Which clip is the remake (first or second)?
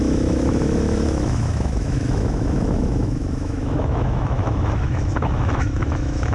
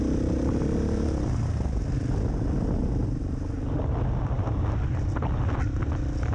first